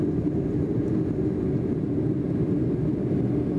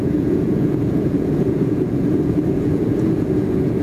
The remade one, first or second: second